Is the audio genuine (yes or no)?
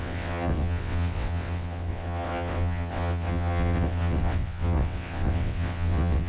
no